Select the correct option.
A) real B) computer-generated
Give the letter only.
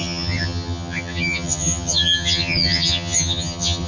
B